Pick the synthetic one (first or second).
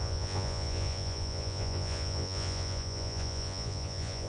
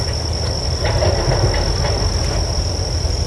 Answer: first